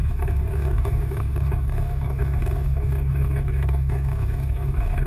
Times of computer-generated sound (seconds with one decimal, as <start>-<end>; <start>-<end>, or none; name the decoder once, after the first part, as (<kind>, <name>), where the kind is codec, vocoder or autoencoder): 0.0-5.1 (codec, DAC)